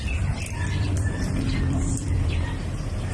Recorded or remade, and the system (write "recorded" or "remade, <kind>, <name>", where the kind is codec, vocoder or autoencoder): remade, vocoder, BigVGAN v2